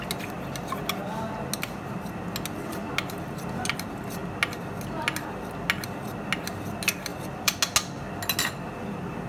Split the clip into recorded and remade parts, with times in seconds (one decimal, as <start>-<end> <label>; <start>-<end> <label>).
0.0-7.1 recorded; 7.1-7.6 remade; 7.6-9.3 recorded